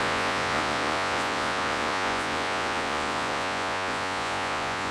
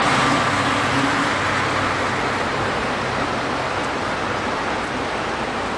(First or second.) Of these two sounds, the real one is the second